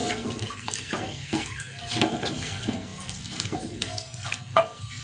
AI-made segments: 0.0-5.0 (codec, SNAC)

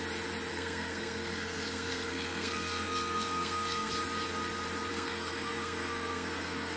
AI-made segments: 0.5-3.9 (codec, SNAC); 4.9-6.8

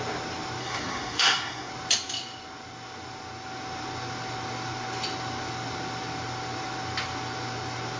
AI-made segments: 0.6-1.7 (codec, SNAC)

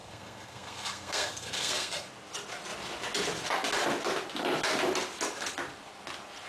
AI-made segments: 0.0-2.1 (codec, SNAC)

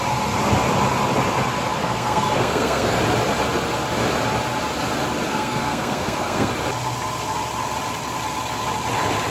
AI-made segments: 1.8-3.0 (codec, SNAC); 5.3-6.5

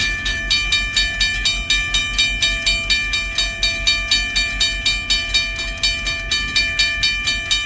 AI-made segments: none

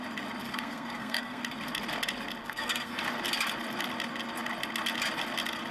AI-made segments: 0.5-1.4 (codec, SNAC); 2.4-3.0